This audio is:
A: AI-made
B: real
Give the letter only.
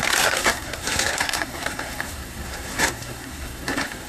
A